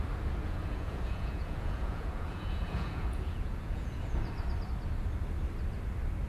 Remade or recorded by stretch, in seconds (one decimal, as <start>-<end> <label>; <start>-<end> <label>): 0.0-0.4 recorded; 0.4-4.2 remade; 4.2-6.3 recorded